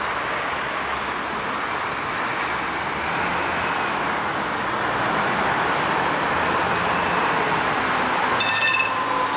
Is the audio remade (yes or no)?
no